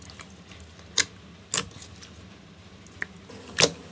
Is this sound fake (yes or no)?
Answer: no